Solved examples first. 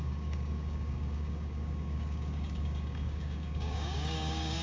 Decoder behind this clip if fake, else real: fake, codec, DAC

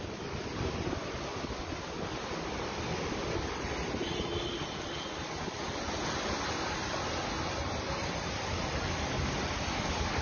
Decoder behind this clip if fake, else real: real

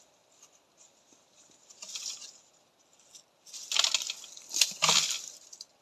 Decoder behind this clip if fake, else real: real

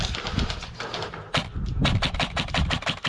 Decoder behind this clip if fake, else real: real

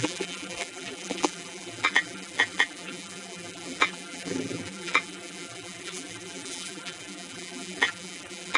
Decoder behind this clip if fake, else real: fake, vocoder, BigVGAN v2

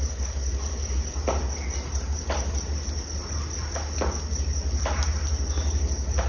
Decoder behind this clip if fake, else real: real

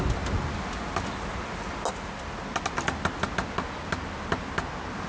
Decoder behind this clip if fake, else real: real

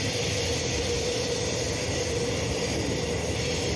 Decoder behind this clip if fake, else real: real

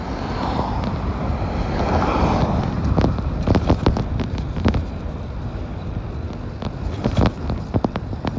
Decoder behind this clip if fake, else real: real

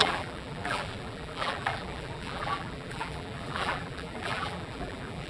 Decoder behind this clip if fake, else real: fake, vocoder, BigVGAN v2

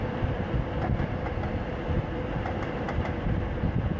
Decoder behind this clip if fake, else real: fake, vocoder, BigVGAN v2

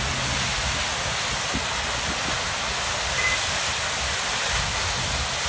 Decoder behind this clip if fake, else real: real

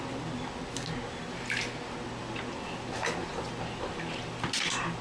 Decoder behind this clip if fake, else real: real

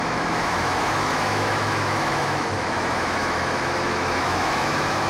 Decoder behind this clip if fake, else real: fake, autoencoder, DAC-VAE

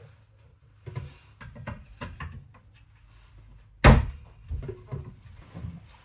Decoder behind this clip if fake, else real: real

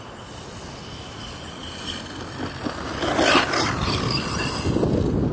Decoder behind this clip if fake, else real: real